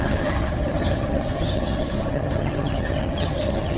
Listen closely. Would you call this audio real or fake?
fake